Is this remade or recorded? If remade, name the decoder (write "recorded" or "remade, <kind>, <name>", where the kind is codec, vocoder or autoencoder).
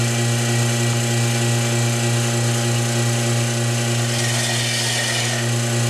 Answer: recorded